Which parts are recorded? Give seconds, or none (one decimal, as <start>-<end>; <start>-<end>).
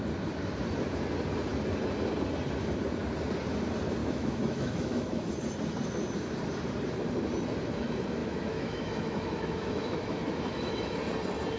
0.0-4.0; 5.3-8.2; 11.0-11.6